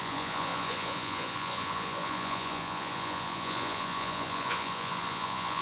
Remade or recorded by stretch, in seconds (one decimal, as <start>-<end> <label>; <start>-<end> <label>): 0.0-5.6 remade